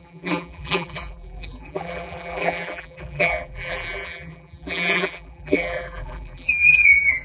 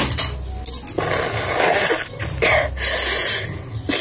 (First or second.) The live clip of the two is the second